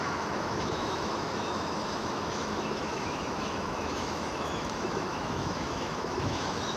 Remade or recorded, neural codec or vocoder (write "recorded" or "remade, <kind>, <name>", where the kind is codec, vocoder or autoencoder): remade, autoencoder, DAC-VAE